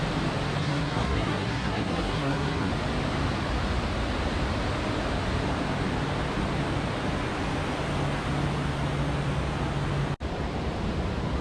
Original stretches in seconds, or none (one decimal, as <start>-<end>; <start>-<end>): 0.0-0.6; 2.7-11.4